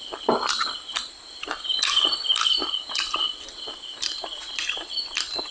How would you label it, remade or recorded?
recorded